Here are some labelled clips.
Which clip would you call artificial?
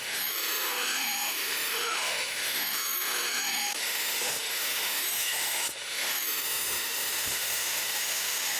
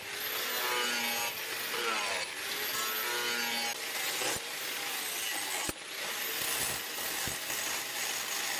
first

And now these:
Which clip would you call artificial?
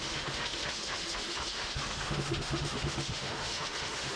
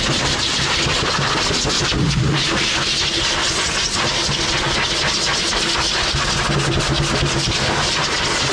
first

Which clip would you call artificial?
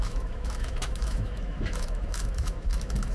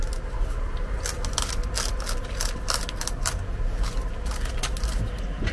first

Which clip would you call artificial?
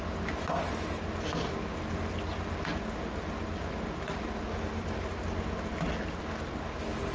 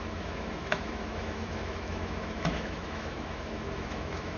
second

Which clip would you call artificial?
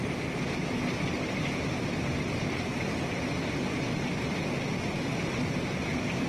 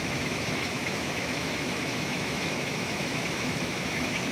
second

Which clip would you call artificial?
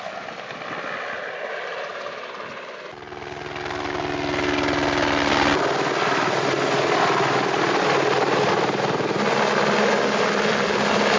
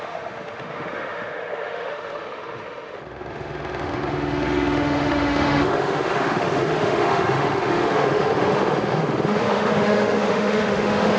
second